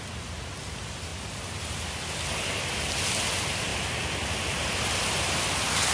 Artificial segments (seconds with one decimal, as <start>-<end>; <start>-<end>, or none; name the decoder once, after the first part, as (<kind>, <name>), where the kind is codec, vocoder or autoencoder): 3.7-5.9 (vocoder, BigVGAN v2)